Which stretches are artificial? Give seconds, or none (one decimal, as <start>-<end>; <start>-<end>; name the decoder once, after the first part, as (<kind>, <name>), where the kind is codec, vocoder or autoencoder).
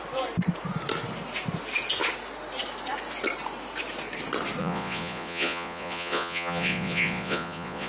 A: 4.6-7.9 (vocoder, Vocos)